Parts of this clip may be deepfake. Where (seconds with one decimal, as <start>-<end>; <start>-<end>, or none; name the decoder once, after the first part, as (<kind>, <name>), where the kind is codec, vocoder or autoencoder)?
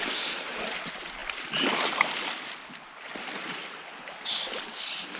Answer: none